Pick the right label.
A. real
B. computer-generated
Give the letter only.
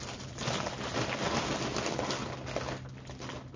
A